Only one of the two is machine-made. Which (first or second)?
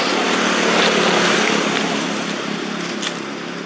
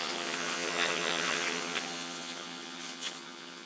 second